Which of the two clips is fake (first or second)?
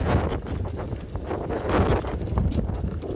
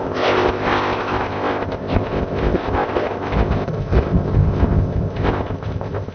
second